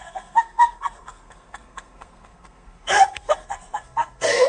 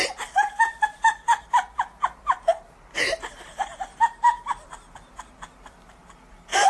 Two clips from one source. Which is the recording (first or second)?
second